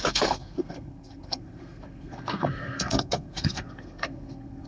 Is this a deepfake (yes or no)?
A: yes